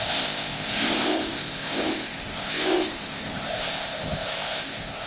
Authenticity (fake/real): fake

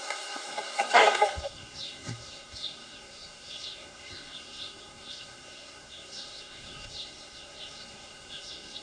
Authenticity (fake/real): fake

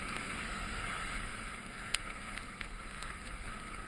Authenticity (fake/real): fake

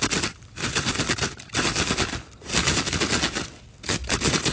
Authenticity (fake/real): real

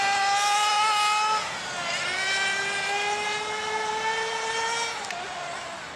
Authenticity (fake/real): real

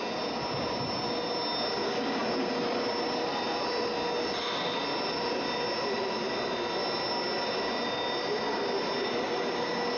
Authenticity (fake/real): real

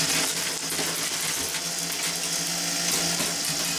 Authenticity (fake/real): real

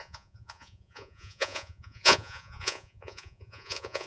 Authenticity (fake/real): fake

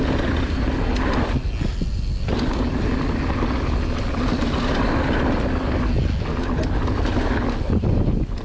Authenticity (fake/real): real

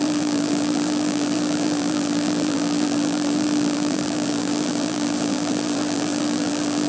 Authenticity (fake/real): fake